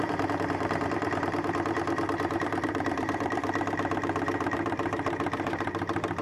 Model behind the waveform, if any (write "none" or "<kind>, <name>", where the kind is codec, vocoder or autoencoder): vocoder, BigVGAN v2